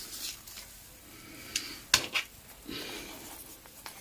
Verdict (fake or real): real